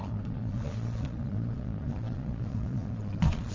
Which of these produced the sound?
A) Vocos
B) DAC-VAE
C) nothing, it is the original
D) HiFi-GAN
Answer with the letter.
A